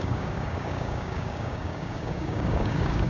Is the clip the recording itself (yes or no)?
no